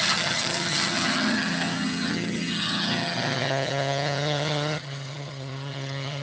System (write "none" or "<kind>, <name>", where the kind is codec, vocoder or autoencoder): vocoder, HiFi-GAN